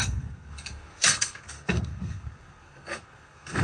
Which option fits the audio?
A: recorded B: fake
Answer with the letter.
B